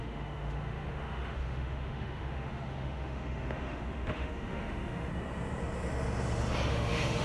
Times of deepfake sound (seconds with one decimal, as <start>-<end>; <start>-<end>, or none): 0.0-5.1; 6.7-7.2